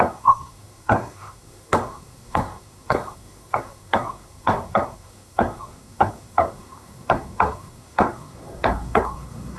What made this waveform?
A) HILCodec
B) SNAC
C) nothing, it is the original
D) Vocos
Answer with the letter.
B